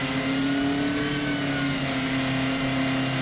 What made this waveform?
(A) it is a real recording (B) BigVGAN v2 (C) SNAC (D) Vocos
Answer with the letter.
A